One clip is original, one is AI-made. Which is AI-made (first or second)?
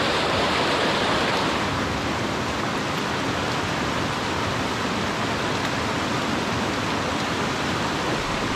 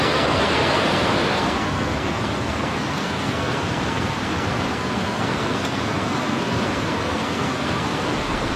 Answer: second